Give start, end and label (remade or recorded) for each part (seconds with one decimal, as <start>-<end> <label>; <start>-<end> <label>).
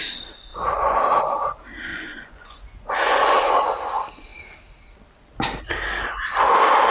0.0-0.5 recorded; 0.5-1.0 remade; 1.0-1.9 recorded; 1.9-3.4 remade; 3.4-6.9 recorded